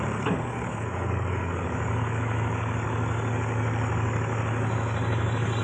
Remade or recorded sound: remade